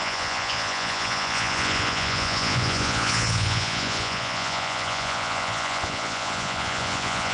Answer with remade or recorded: remade